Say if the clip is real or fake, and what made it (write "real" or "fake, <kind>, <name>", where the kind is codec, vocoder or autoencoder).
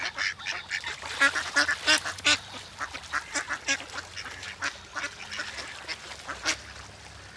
real